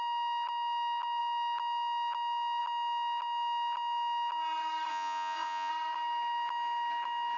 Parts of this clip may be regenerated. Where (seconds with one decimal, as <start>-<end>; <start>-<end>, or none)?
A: 4.9-5.7